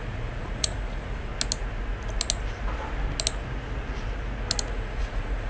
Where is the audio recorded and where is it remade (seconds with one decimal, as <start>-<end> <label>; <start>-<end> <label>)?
0.0-1.3 remade; 1.3-4.6 recorded; 4.6-5.5 remade